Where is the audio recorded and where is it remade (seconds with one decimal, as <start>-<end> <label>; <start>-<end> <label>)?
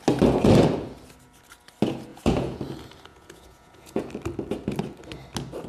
0.0-2.1 recorded; 2.1-2.6 remade; 2.6-3.1 recorded; 3.1-4.1 remade; 4.1-5.7 recorded